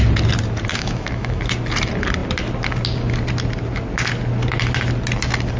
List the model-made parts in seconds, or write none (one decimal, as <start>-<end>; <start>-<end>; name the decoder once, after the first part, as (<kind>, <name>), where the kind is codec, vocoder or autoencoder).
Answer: 0.7-1.4 (autoencoder, DAC-VAE)